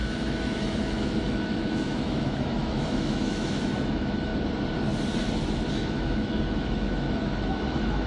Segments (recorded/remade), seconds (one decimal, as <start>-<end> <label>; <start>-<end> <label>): 0.0-4.3 remade; 4.3-5.7 recorded; 5.7-8.1 remade